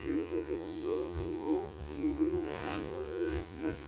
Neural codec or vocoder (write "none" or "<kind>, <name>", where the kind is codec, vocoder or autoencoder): vocoder, Vocos